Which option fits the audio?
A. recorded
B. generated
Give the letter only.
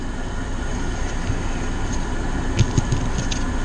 A